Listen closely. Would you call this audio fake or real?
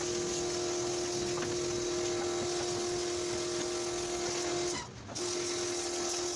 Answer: real